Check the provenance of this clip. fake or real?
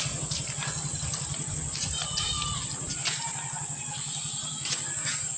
real